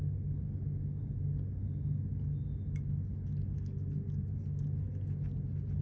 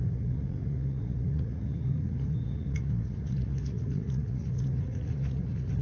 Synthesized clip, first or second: second